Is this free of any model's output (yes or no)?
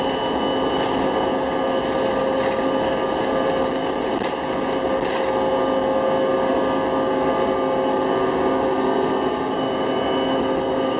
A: yes